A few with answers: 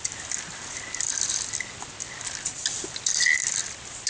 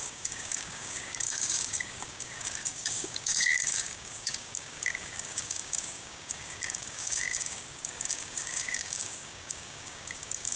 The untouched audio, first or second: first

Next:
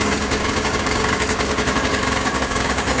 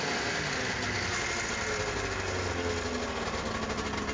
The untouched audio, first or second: second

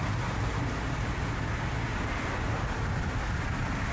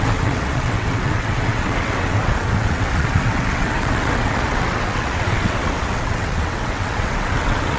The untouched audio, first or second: first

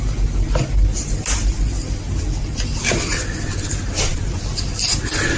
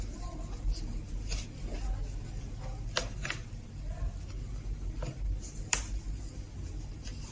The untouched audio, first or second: first